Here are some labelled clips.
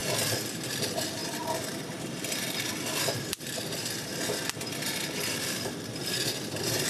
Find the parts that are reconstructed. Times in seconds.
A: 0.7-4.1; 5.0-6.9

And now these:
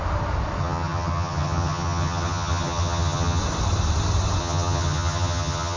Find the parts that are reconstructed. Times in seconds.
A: 0.6-3.4; 4.4-5.8

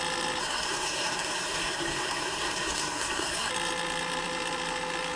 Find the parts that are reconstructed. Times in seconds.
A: 0.4-3.5

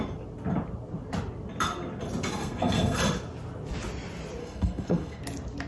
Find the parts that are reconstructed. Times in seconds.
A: 2.4-3.0; 4.4-5.2

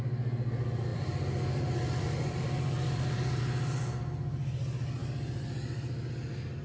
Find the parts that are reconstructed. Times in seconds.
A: 0.9-3.4

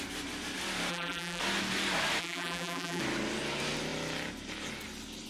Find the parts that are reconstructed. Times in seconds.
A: 0.9-1.4; 2.2-3.0

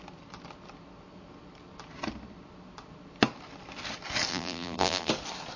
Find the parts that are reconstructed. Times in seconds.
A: 4.3-5.1

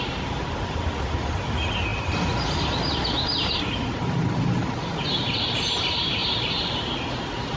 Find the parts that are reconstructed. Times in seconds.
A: none